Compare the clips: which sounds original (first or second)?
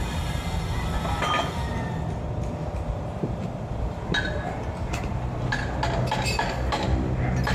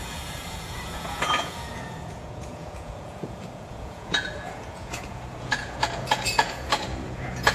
first